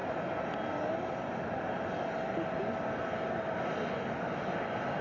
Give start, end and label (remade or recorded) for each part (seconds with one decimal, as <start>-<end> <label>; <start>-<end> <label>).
0.0-5.0 recorded